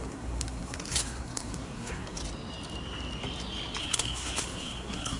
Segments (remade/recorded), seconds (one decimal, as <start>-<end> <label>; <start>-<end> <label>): 0.0-2.2 remade; 2.2-3.8 recorded; 3.8-5.2 remade